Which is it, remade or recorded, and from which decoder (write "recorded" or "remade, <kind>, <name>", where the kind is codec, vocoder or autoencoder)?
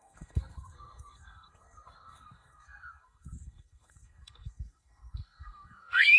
remade, codec, SNAC